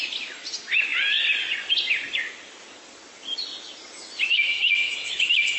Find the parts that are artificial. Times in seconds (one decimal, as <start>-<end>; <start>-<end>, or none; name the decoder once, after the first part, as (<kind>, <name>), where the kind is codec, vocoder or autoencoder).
4.4-5.6 (autoencoder, DAC-VAE)